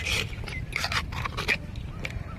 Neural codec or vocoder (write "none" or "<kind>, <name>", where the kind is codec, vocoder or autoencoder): none